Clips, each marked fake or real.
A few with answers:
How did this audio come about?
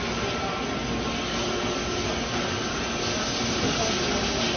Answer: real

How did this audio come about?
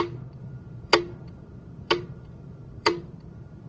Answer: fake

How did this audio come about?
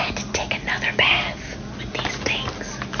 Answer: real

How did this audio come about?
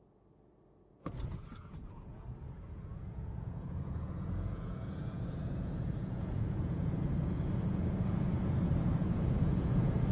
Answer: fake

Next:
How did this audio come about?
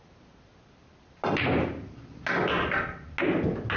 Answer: real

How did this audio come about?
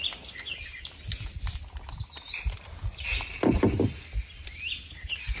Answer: real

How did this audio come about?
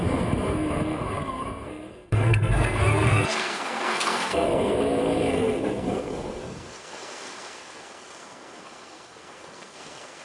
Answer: fake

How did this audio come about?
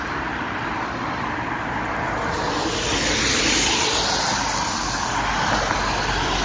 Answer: real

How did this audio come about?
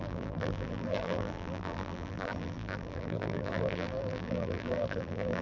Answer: fake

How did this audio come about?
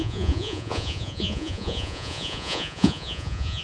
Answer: fake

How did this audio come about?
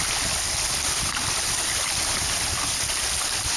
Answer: real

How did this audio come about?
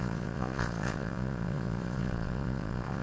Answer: fake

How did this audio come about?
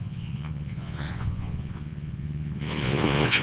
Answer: fake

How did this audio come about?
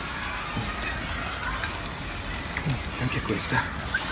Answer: real